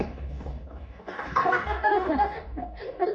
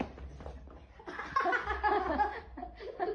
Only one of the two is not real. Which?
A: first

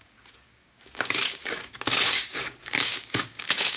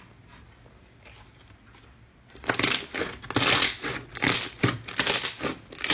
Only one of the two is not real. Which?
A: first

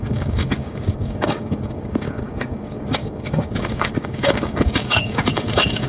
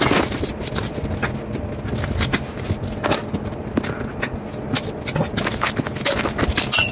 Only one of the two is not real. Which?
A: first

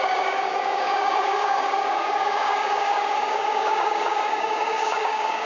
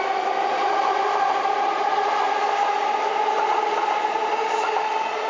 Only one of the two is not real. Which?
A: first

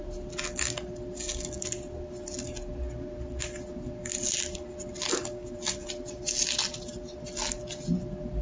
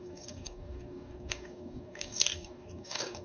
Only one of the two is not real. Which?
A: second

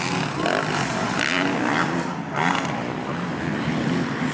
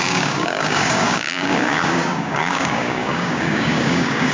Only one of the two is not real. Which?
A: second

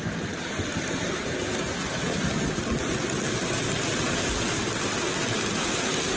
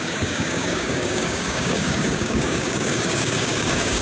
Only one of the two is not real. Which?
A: second